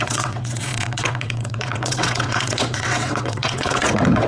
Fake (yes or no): yes